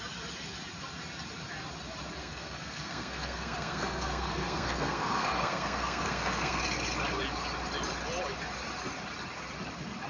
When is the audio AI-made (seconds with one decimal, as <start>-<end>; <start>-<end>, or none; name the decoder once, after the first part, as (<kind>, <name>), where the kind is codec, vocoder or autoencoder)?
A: 2.2-6.6 (codec, SNAC)